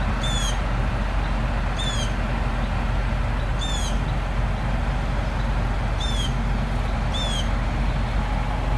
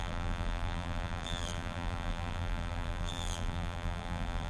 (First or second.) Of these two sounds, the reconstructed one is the second